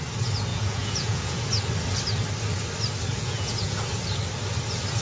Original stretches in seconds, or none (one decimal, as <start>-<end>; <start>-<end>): 0.0-0.5; 1.6-3.1; 3.8-5.0